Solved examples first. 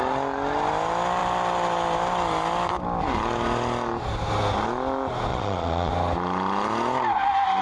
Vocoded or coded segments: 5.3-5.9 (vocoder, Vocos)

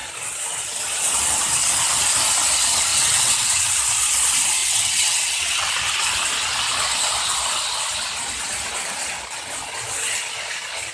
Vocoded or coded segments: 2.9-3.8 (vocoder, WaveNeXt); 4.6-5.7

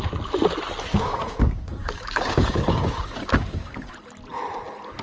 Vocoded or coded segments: 0.9-3.9 (codec, DAC)

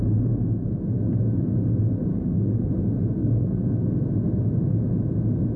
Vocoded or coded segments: 2.1-2.7 (codec, SNAC); 3.2-3.8